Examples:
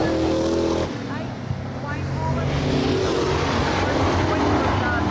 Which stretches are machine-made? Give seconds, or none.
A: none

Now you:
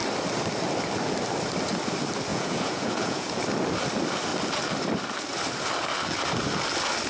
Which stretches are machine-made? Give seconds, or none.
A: 2.3-3.4 (vocoder, Vocos)

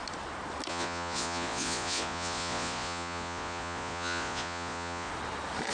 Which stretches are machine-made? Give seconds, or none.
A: 0.7-5.1 (vocoder, Vocos)